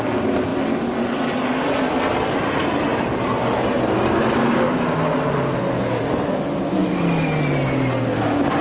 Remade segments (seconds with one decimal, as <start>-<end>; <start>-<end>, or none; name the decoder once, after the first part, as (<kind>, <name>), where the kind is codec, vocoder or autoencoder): none